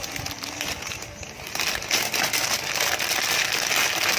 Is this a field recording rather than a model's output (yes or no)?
yes